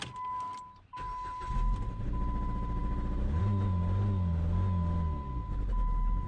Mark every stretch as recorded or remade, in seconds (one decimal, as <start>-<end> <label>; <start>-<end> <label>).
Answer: 0.0-6.3 recorded